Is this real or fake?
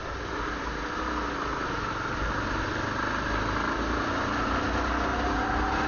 real